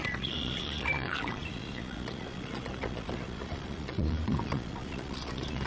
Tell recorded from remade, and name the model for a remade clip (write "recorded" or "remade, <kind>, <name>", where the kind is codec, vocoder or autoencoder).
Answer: remade, vocoder, Vocos